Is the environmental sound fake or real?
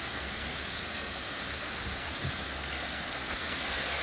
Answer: fake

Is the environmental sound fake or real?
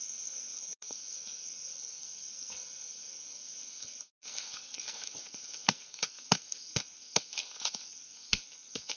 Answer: fake